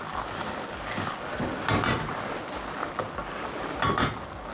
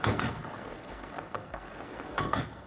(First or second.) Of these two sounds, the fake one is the second